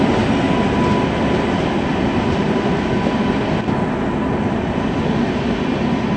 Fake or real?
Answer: real